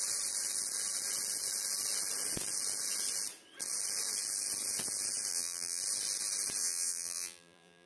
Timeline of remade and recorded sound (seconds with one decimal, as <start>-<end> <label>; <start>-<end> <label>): 0.0-5.3 recorded; 5.3-5.8 remade; 5.8-6.6 recorded; 6.6-7.9 remade